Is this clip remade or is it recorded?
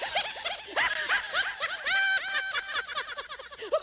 recorded